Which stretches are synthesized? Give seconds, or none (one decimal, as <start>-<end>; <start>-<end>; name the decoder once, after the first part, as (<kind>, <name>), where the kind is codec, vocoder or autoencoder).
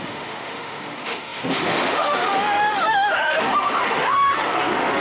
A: 0.0-5.0 (autoencoder, DAC-VAE)